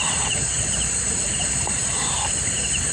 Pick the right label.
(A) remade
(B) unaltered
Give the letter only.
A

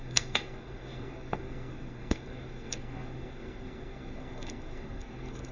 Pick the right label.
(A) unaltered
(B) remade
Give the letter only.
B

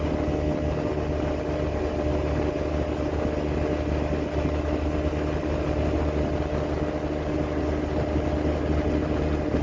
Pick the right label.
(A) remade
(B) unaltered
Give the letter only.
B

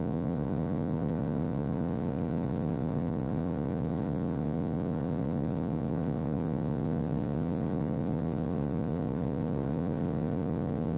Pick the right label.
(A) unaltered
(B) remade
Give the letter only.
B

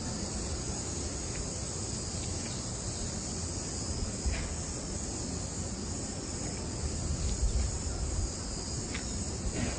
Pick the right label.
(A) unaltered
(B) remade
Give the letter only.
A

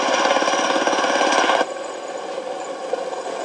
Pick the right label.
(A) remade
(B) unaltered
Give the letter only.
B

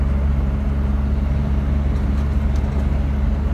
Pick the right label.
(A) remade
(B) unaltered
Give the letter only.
B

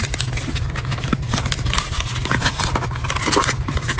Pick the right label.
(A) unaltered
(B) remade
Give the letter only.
A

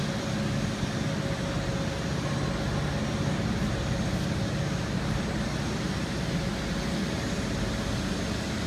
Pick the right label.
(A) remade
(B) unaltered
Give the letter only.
B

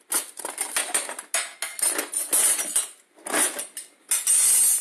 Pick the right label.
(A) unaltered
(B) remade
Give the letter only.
A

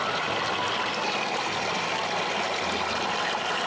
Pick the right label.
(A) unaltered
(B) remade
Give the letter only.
A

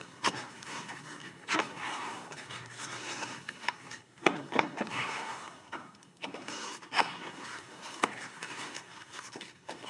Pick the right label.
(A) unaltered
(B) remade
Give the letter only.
B